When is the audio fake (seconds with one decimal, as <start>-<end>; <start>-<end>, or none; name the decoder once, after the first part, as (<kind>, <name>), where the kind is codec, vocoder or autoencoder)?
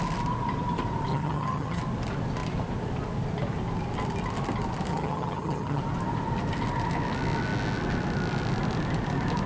1.1-1.8 (vocoder, HiFi-GAN); 4.9-5.8